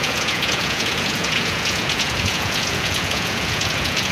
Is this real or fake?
fake